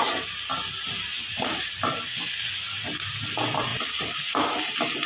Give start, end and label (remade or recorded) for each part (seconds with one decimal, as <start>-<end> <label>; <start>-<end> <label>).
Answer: 0.0-1.1 recorded; 1.1-1.8 remade; 1.8-5.1 recorded